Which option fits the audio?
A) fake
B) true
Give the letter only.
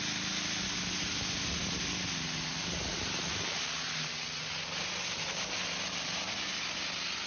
B